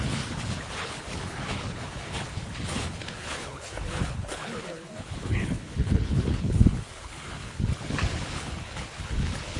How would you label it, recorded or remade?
remade